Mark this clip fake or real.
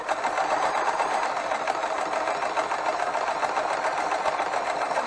fake